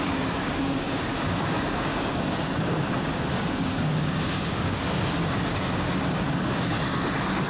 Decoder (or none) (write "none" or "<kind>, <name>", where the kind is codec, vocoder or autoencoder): codec, DAC